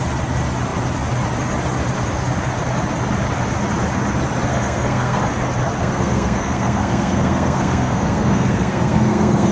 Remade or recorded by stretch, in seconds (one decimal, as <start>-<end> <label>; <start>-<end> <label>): 0.0-4.5 recorded; 4.5-5.2 remade; 5.2-5.8 recorded; 5.8-9.5 remade